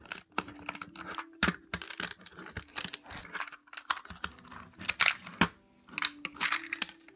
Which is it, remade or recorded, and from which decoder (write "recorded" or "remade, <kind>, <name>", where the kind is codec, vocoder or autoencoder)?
recorded